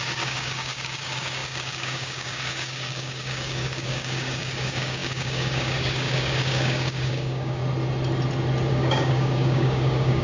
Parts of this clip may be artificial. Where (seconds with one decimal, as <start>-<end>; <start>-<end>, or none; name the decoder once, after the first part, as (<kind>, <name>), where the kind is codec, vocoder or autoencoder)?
0.0-7.6 (codec, DAC); 8.7-10.2